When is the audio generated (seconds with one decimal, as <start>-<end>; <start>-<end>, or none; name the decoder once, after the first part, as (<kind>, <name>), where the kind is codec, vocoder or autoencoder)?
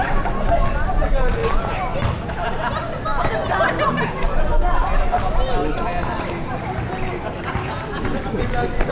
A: none